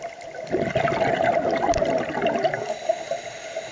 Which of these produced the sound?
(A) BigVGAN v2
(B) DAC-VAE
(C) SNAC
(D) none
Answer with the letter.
D